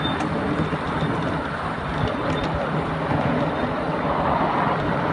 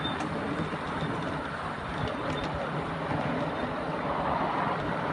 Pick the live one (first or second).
first